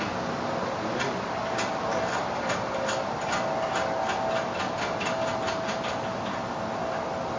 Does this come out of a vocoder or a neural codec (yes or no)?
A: no